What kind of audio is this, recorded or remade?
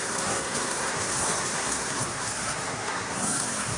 remade